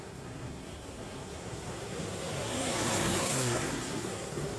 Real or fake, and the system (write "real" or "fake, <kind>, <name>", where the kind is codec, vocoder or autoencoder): fake, codec, SNAC